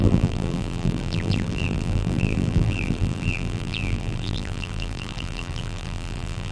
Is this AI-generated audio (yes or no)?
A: yes